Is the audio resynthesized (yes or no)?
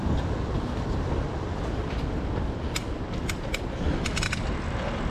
yes